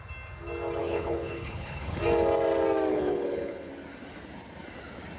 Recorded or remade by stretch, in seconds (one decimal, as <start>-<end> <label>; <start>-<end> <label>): 0.0-0.8 recorded; 0.8-2.0 remade; 2.0-2.9 recorded; 2.9-3.7 remade; 3.7-5.2 recorded